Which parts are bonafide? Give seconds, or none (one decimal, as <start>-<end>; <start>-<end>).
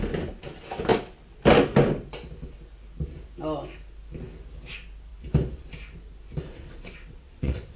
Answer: 0.0-6.5